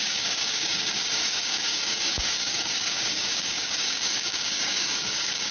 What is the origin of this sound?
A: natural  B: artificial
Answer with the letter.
B